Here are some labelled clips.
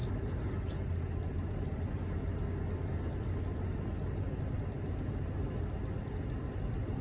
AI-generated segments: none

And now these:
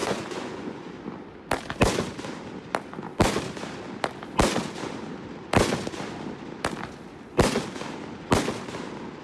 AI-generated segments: 0.0-0.9 (vocoder, Vocos)

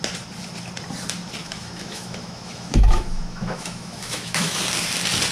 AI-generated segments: 1.4-4.6 (autoencoder, DAC-VAE)

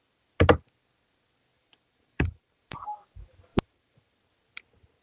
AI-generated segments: 1.5-2.8 (vocoder, BigVGAN v2); 3.5-4.2